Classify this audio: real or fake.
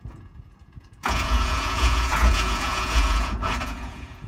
fake